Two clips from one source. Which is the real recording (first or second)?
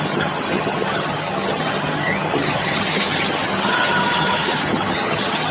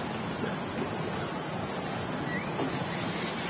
second